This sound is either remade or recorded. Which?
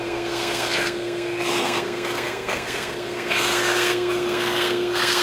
remade